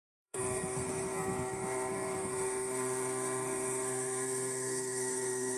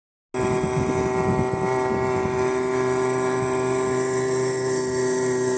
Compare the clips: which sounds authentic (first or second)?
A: second